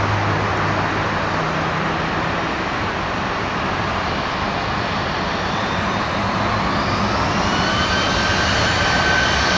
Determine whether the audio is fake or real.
real